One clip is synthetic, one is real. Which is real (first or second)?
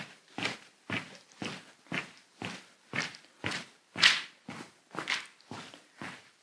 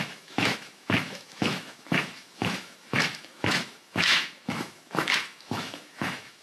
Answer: first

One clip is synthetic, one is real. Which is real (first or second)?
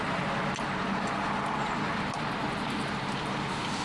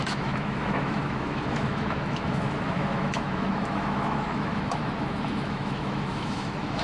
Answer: first